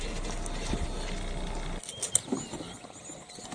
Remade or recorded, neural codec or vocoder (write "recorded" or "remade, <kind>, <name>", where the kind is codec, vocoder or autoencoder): recorded